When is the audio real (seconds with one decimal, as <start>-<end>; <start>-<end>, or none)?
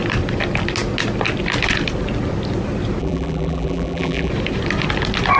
0.0-3.0; 4.3-5.4